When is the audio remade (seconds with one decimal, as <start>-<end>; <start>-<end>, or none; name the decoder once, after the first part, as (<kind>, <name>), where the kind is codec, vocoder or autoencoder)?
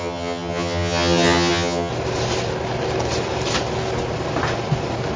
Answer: 0.0-1.9 (vocoder, HiFi-GAN)